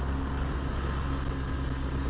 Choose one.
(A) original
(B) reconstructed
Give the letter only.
A